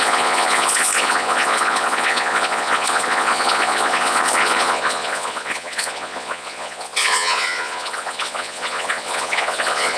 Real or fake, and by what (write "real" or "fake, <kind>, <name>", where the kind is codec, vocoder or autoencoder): fake, vocoder, Vocos